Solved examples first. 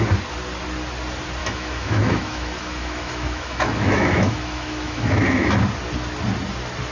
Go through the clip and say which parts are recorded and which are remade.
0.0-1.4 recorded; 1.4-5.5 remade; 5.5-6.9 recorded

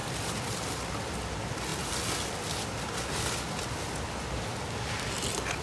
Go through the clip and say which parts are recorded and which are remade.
0.0-5.6 recorded

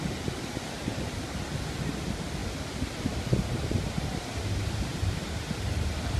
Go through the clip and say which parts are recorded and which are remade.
0.0-6.2 recorded

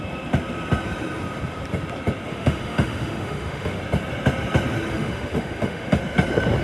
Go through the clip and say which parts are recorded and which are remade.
0.0-2.3 recorded; 2.3-3.8 remade; 3.8-4.9 recorded; 4.9-6.0 remade; 6.0-6.6 recorded

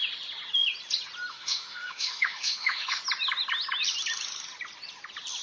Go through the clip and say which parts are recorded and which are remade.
0.0-1.3 recorded; 1.3-3.0 remade; 3.0-5.4 recorded

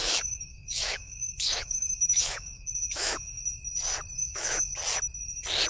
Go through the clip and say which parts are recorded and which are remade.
0.0-3.4 remade; 3.4-4.2 recorded; 4.2-4.7 remade; 4.7-5.7 recorded

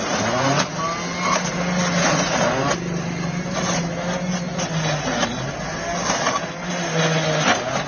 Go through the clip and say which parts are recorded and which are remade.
0.0-7.9 recorded

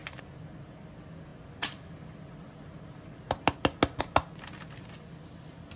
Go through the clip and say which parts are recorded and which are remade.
0.0-5.8 recorded